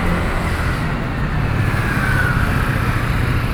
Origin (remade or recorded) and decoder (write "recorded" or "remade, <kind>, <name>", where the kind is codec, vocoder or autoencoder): recorded